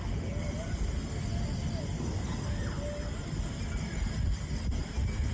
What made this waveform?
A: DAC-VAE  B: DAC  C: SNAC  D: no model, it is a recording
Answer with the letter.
D